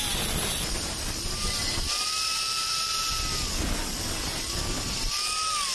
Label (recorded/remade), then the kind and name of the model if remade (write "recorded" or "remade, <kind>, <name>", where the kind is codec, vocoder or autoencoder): recorded